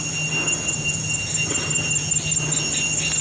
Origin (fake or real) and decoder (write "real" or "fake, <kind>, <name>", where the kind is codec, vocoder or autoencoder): real